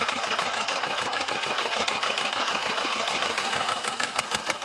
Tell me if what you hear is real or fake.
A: fake